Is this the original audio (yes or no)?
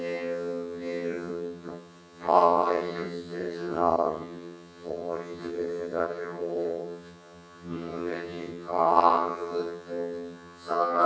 no